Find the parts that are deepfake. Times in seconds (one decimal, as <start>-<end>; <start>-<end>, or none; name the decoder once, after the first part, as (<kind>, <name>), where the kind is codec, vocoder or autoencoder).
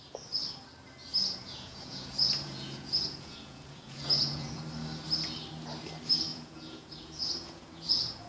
1.1-4.6 (vocoder, Vocos); 6.3-8.3